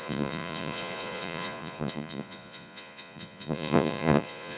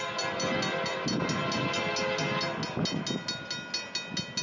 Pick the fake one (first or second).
first